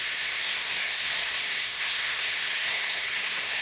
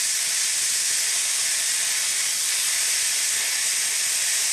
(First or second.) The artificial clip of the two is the first